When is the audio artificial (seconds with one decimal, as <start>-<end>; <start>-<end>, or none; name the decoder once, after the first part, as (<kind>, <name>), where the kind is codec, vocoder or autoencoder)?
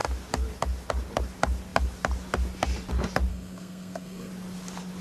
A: 3.3-4.3 (codec, SNAC)